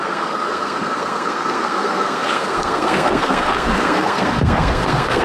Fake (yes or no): yes